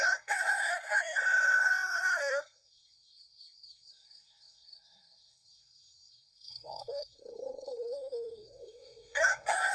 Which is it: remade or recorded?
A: remade